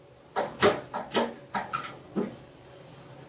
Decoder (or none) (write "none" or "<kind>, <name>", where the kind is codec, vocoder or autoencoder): none